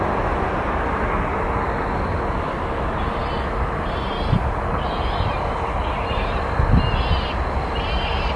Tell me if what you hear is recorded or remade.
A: recorded